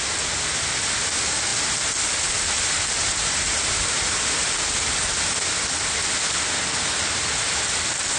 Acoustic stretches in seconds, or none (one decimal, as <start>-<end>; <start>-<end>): 0.0-8.2